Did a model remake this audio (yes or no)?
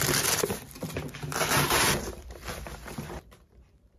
yes